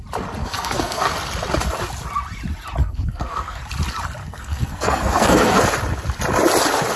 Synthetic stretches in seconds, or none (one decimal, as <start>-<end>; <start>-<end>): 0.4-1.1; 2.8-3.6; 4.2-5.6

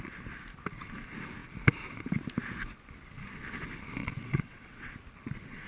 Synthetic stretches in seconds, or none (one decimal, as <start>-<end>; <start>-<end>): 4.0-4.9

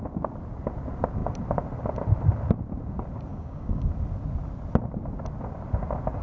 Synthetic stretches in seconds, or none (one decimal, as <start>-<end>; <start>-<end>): 3.3-3.9

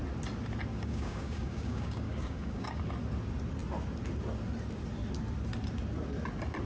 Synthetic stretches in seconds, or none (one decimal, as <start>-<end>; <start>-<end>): 0.7-2.8